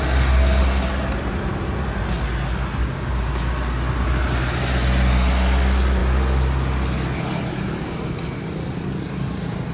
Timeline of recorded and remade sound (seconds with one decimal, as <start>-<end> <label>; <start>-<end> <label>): 0.0-2.8 recorded; 2.8-3.3 remade; 3.3-9.7 recorded